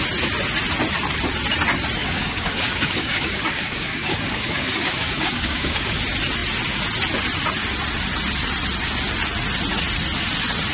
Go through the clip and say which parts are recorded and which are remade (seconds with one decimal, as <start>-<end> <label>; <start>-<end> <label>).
0.0-2.0 recorded; 2.0-6.0 remade; 6.0-10.7 recorded